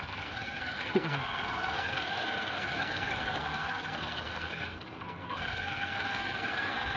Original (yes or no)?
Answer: no